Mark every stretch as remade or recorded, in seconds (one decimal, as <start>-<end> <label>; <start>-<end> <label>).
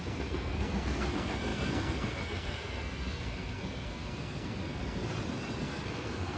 0.0-5.0 remade; 5.0-5.6 recorded; 5.6-6.4 remade